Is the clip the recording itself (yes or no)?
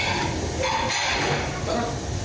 yes